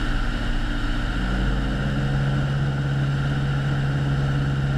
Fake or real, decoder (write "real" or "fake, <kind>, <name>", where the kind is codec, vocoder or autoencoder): real